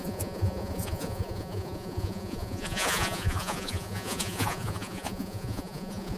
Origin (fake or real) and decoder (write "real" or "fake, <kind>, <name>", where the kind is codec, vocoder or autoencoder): fake, vocoder, Vocos